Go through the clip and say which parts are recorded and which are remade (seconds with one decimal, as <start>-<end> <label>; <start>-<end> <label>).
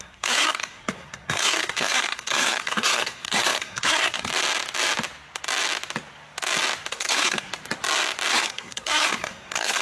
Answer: 0.0-4.3 remade; 4.3-6.9 recorded; 6.9-7.5 remade; 7.5-8.3 recorded; 8.3-9.8 remade